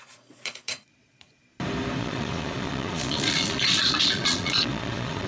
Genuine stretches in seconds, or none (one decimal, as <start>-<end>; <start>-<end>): 1.4-2.0